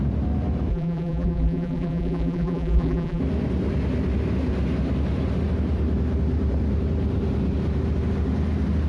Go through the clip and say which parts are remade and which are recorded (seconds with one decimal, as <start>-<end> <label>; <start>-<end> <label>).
0.0-0.7 recorded; 0.7-3.2 remade; 3.2-8.9 recorded